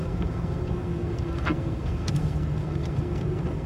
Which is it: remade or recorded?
remade